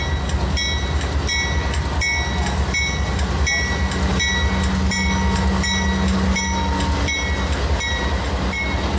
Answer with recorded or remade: recorded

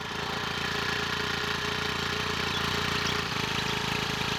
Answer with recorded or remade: recorded